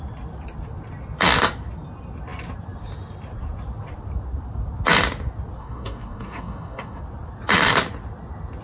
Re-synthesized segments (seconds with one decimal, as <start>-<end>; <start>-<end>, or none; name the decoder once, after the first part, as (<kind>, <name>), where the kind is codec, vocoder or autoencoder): 5.6-7.0 (codec, DAC)